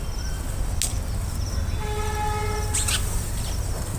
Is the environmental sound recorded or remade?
recorded